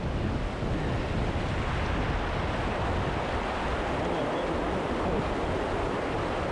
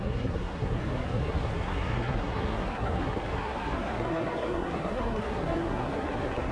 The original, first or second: first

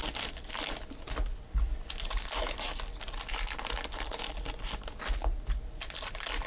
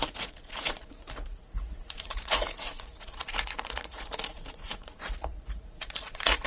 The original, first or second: first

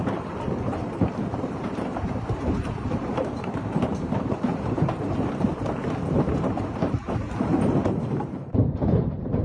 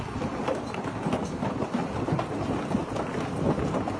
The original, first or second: second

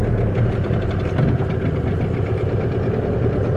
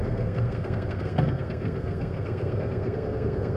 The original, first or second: first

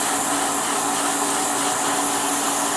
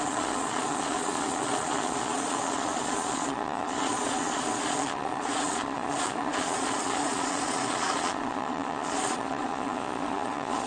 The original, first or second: first